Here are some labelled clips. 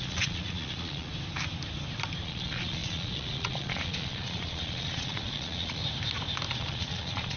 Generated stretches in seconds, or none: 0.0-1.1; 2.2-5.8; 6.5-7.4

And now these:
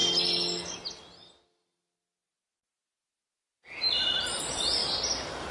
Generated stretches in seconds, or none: none

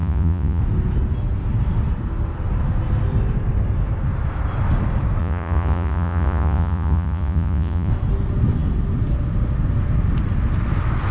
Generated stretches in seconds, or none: 0.0-0.6; 5.2-7.9

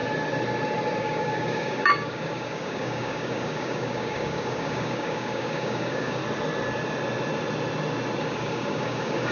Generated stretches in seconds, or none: 1.0-6.2; 8.2-9.3

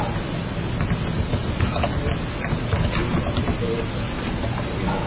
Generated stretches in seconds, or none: none